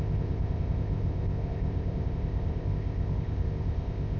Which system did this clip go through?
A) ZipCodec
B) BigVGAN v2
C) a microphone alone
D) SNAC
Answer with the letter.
A